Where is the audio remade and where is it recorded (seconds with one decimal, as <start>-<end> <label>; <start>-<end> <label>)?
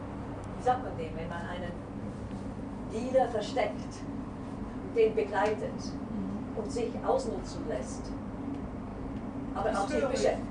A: 0.0-10.5 recorded